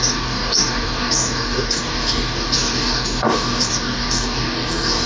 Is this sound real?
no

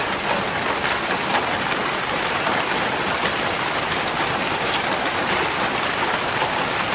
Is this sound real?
yes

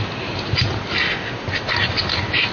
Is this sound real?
yes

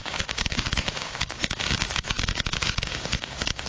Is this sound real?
no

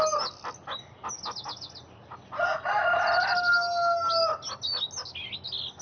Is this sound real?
yes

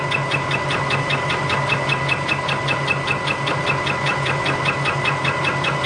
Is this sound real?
yes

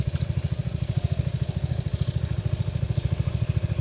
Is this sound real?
yes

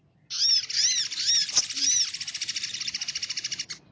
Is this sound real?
yes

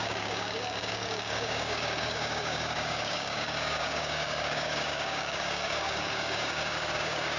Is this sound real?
no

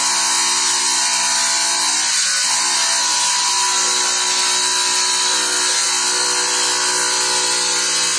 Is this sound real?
yes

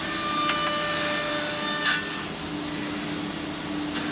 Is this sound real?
yes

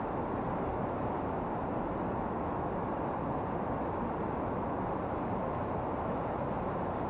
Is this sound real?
yes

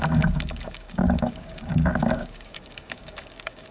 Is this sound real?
no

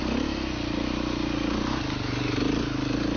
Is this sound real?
yes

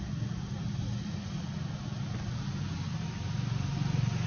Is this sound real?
yes